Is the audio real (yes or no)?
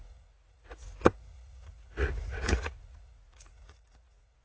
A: no